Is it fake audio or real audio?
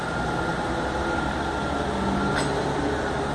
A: real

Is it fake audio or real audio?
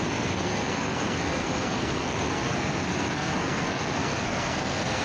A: fake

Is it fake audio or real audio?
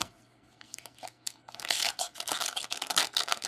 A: fake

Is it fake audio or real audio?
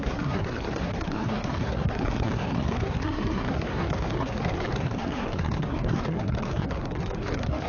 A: fake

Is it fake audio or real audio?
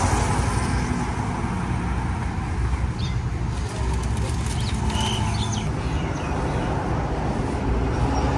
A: real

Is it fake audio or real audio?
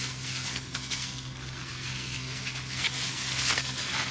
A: fake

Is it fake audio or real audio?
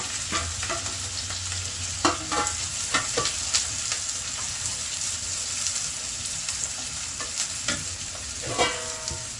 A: real